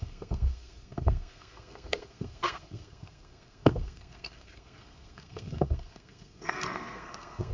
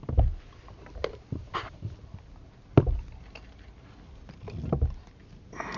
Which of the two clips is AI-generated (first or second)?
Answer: first